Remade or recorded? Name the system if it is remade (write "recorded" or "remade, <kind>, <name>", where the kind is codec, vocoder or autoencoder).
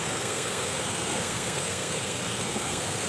remade, codec, SNAC